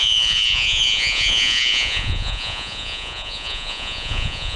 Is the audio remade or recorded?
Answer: remade